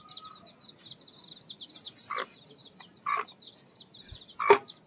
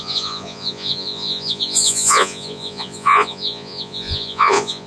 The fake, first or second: second